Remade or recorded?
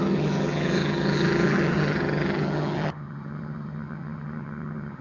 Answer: remade